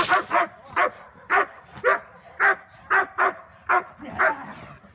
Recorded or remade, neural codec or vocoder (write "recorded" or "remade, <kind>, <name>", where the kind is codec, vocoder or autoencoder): recorded